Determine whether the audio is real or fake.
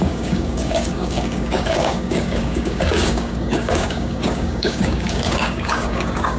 fake